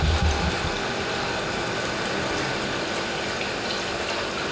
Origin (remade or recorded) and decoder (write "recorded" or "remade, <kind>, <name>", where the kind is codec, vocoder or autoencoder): recorded